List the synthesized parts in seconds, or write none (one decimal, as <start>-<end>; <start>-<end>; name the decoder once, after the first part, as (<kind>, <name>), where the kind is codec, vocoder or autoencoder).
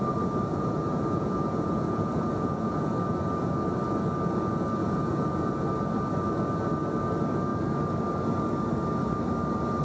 0.5-2.8 (vocoder, Vocos); 4.8-5.5